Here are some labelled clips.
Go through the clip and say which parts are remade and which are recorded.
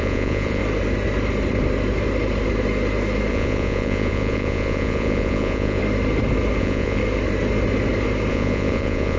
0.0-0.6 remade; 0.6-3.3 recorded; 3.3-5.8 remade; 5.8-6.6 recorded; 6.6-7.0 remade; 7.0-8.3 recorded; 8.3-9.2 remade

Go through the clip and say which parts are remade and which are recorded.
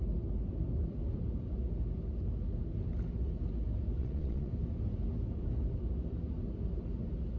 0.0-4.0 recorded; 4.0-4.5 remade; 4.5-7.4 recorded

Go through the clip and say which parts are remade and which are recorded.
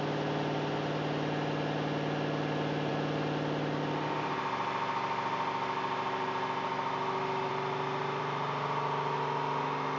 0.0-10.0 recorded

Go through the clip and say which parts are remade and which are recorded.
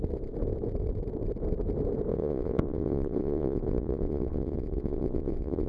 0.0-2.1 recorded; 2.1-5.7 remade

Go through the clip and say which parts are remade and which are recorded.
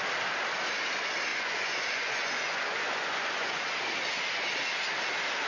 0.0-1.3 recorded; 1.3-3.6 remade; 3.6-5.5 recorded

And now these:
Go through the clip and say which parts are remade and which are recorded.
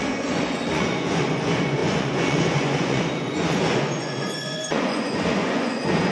0.0-6.1 remade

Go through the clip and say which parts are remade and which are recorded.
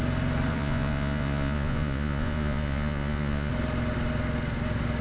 0.0-0.5 recorded; 0.5-3.5 remade; 3.5-5.0 recorded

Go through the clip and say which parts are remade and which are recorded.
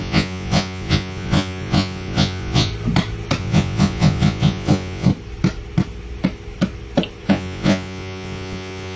0.0-2.7 remade; 2.7-3.4 recorded; 3.4-5.1 remade; 5.1-7.3 recorded; 7.3-9.0 remade